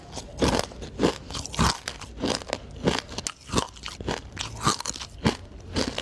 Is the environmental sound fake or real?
real